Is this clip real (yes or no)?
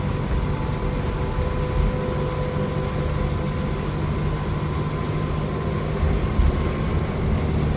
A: yes